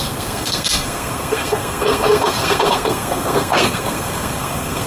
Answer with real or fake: fake